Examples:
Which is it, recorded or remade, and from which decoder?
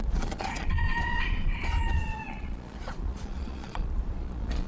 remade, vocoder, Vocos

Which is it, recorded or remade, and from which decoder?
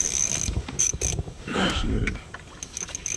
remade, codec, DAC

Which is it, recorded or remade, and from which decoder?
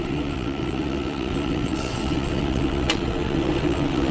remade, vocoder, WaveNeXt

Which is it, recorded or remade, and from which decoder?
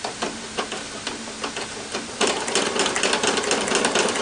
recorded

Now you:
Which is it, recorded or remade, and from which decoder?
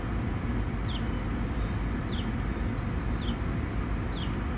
recorded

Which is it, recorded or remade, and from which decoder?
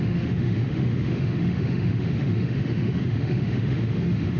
remade, autoencoder, DAC-VAE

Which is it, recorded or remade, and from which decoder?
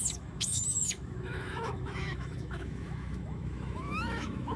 remade, autoencoder, DAC-VAE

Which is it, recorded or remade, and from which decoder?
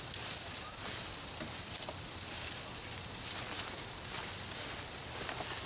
recorded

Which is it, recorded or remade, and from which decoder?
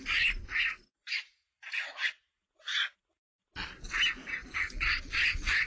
recorded